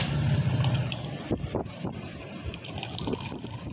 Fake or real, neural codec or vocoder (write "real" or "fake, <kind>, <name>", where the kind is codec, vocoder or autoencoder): fake, vocoder, BigVGAN v2